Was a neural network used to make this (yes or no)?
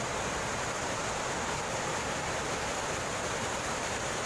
no